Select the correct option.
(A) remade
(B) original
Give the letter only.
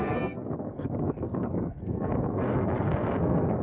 A